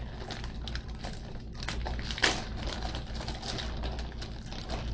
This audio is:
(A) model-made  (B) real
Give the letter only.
B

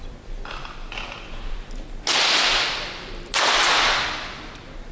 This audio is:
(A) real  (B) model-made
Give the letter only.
A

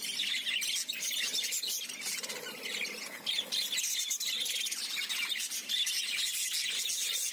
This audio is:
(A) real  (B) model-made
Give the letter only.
A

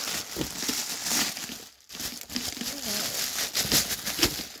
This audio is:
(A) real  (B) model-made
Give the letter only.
A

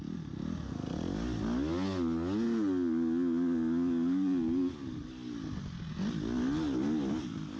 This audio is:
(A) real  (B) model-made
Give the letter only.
A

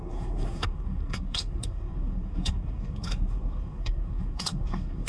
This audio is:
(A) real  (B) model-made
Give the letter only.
B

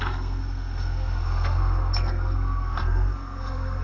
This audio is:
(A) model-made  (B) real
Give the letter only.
A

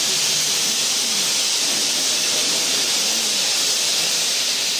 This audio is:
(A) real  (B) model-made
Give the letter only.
A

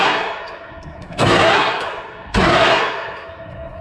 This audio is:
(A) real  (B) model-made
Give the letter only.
B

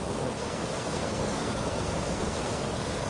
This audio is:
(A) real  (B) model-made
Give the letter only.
B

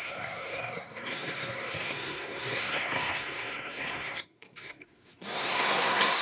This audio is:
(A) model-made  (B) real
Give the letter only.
A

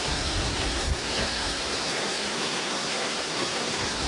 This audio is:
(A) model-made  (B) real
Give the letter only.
A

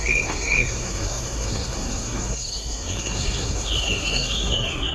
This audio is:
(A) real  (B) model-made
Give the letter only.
B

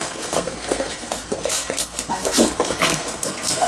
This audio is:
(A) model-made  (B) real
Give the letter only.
A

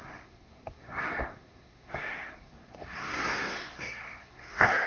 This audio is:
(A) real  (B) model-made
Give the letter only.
B